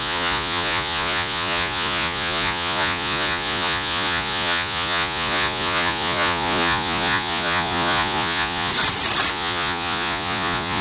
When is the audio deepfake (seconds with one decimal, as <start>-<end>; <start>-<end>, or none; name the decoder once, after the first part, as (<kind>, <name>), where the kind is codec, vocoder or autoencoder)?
0.0-8.7 (vocoder, Vocos); 9.3-10.8